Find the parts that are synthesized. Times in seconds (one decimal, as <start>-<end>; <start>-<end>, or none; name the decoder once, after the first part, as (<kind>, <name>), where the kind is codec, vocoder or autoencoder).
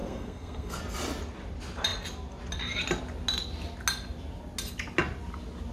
0.0-0.8 (codec, SNAC)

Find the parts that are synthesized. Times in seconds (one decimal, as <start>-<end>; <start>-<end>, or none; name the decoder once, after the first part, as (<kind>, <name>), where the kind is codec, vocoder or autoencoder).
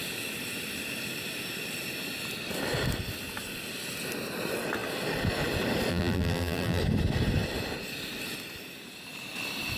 5.9-6.8 (vocoder, BigVGAN v2)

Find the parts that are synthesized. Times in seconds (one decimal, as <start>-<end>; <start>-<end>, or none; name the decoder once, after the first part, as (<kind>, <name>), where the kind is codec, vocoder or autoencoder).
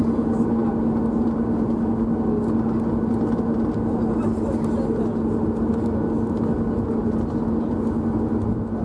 none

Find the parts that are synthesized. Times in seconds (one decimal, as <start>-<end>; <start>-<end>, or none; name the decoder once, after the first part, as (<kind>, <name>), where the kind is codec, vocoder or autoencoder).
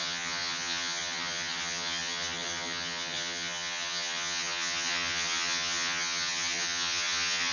0.0-7.5 (vocoder, HiFi-GAN)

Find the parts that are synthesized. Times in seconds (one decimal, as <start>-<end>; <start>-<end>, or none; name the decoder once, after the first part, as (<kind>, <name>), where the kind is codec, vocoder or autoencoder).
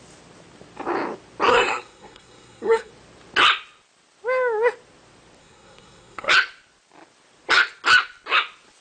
1.5-2.9 (codec, SNAC); 5.4-6.3